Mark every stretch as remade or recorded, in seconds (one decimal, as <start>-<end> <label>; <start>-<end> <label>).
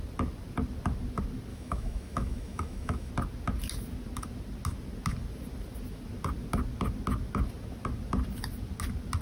0.0-1.5 recorded; 1.5-3.1 remade; 3.1-9.2 recorded